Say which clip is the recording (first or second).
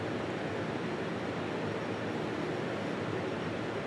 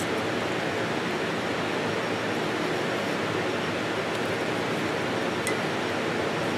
second